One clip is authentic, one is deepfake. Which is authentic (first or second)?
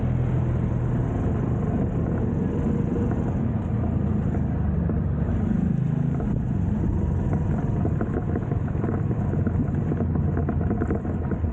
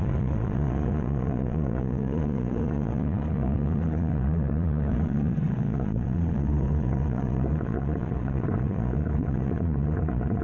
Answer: first